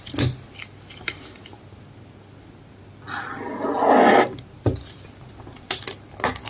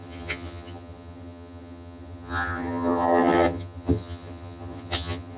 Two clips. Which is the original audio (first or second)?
first